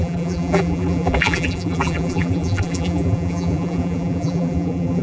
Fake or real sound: fake